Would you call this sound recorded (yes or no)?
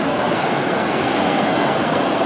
no